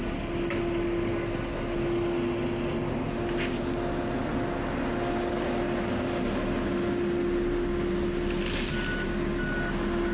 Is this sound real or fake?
real